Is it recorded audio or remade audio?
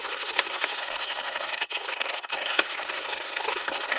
remade